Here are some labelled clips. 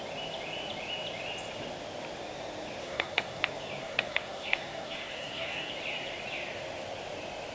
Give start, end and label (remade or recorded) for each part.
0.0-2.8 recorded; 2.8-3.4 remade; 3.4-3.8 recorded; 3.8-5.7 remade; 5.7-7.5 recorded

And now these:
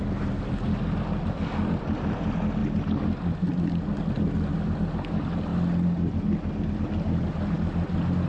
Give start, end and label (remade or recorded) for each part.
0.0-8.3 recorded

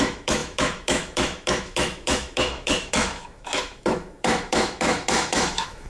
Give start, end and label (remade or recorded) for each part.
0.0-5.9 remade

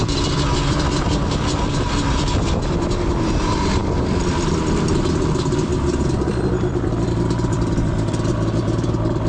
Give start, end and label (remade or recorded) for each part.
0.0-9.3 remade

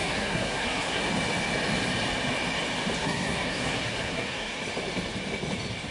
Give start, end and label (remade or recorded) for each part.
0.0-1.0 remade; 1.0-3.0 recorded; 3.0-4.6 remade; 4.6-5.9 recorded

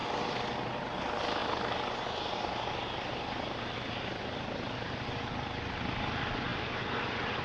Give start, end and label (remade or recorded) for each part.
0.0-7.4 recorded